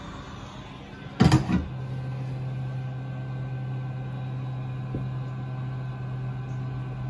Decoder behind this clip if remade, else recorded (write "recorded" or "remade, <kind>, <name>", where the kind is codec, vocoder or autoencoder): recorded